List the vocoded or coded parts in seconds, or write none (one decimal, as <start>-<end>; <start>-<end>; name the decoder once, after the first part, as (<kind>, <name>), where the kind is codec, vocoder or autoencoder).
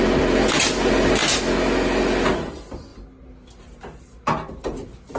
none